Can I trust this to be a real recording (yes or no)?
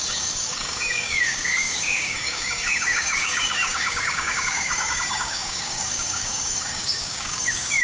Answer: no